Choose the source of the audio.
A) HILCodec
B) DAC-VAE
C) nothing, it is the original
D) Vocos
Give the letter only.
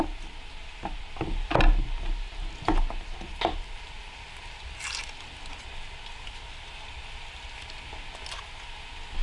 C